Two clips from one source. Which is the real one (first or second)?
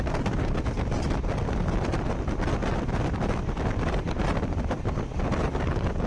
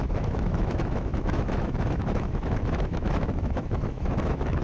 first